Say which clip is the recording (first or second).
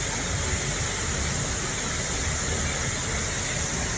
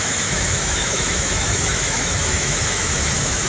first